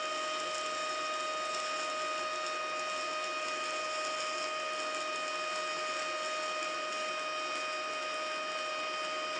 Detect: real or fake real